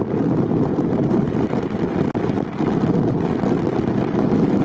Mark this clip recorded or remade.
recorded